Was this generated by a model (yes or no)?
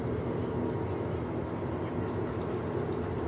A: no